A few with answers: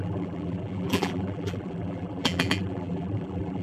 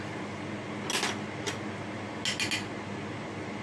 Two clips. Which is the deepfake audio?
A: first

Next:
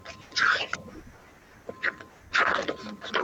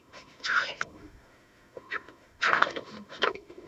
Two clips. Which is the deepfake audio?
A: second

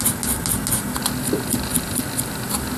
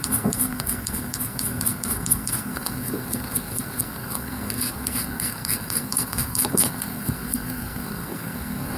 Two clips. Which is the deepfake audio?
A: second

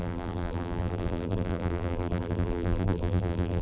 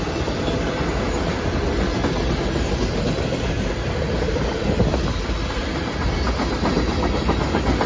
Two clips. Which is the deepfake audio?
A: first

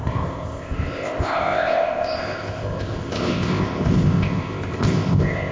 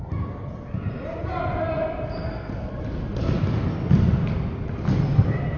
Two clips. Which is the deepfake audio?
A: first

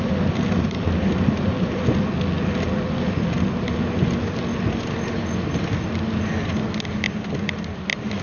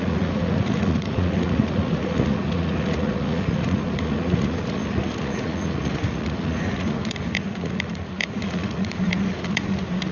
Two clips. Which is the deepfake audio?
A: second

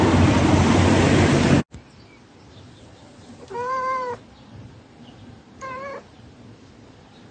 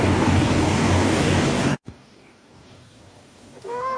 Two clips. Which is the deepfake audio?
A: second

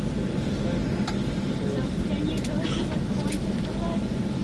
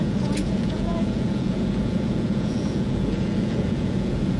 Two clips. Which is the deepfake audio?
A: second